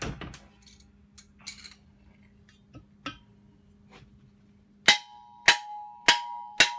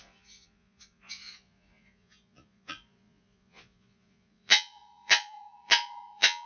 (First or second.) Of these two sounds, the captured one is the first